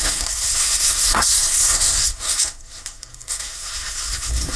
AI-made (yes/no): yes